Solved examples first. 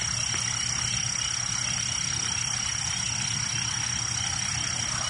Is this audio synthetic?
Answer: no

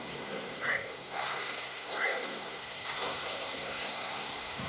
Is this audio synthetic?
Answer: yes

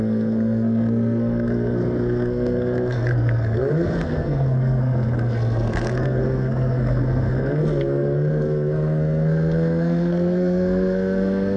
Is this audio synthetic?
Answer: yes